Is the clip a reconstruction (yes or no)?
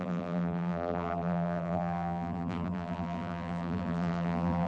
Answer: yes